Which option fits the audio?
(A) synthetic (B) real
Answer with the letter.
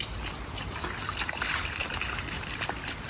B